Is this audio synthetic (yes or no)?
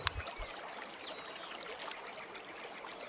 no